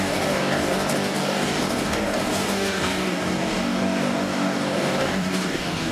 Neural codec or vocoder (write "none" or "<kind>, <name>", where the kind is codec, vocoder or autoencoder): codec, DAC